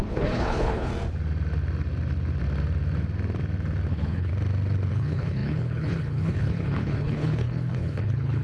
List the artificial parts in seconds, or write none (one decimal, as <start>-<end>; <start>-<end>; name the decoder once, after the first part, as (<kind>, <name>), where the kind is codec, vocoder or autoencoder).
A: 0.0-0.9 (codec, HILCodec); 3.9-4.3; 4.9-8.4

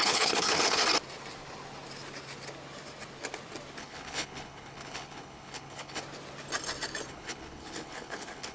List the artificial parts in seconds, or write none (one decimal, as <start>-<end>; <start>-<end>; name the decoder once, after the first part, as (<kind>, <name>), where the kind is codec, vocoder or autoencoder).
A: 0.0-0.8 (codec, HILCodec); 3.8-6.0; 7.1-8.5

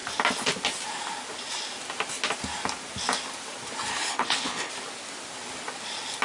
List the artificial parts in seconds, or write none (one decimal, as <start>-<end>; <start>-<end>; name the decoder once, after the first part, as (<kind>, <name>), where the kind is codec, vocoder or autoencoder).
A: 3.9-4.7 (codec, HILCodec)

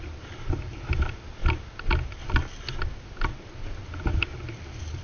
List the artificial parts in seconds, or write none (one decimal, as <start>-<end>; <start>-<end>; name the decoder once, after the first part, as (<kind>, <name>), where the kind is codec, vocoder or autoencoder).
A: none

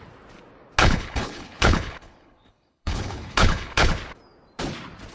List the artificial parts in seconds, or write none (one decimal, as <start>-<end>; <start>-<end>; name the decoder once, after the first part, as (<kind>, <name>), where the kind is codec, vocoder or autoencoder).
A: 0.8-3.9 (codec, HILCodec)

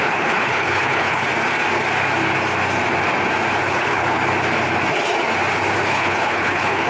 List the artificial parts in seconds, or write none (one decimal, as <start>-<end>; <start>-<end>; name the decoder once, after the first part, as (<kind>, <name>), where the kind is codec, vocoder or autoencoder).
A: 0.0-1.3 (codec, HILCodec); 3.6-4.2; 5.8-6.9

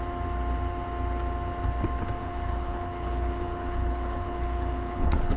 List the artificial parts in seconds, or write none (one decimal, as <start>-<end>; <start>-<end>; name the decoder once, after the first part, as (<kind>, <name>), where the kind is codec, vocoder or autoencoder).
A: 2.2-5.4 (codec, HILCodec)

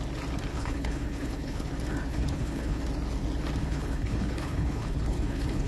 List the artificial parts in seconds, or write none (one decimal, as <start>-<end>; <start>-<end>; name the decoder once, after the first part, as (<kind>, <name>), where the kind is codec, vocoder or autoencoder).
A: 0.5-1.7 (codec, HILCodec); 2.1-2.8; 3.6-5.7